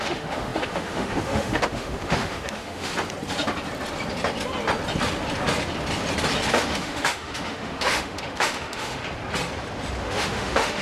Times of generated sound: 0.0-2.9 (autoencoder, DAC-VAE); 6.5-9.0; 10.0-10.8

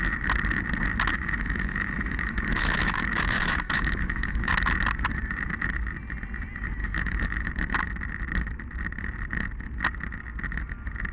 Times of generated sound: 1.1-4.5 (autoencoder, DAC-VAE); 6.8-7.5

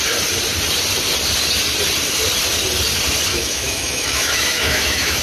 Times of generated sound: 3.3-5.2 (autoencoder, DAC-VAE)

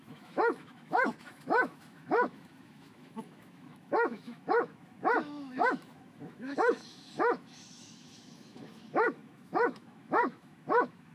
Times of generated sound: 0.0-11.1 (autoencoder, DAC-VAE)